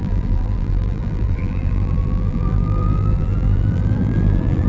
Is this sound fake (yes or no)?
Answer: yes